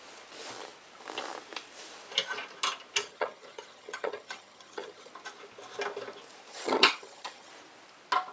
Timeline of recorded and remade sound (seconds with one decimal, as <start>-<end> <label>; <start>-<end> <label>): 0.0-3.0 recorded; 3.0-5.1 remade; 5.1-6.5 recorded; 6.5-7.5 remade; 7.5-8.3 recorded